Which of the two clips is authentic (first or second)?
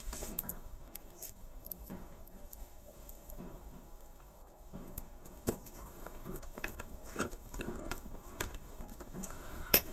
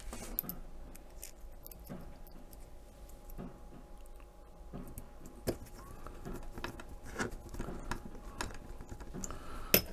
second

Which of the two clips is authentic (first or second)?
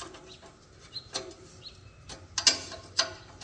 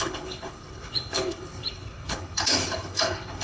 first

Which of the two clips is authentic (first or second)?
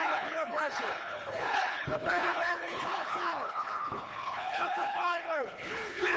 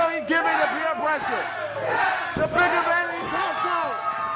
second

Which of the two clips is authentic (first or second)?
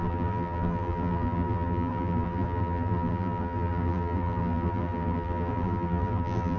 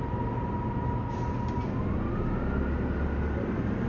second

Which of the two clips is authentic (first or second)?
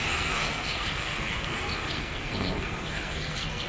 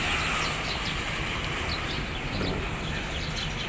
second